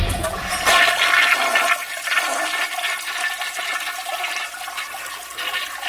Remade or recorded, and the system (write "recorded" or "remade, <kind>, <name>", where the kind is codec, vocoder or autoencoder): recorded